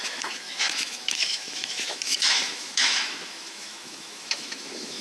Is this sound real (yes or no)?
no